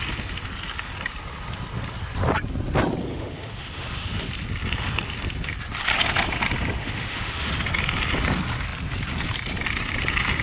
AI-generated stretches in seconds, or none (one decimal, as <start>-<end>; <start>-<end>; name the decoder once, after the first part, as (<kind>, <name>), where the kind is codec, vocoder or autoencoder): 3.1-4.3 (autoencoder, DAC-VAE); 6.8-7.5